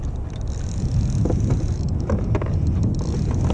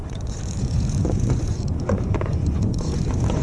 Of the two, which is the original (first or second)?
first